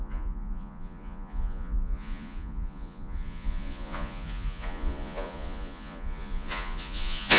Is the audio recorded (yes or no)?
no